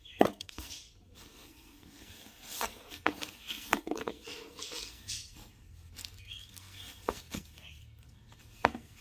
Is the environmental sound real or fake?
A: fake